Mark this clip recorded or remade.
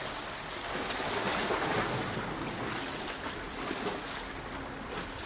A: recorded